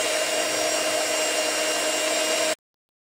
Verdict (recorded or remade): recorded